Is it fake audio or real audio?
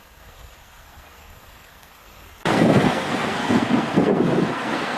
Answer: fake